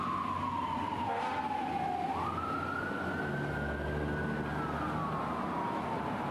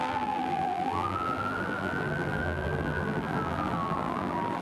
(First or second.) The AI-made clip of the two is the second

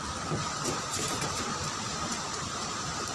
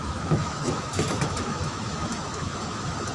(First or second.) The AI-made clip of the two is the second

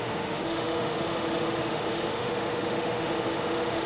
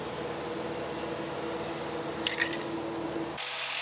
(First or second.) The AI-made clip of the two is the first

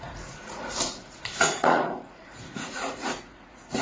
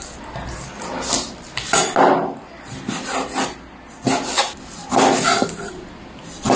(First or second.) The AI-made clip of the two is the first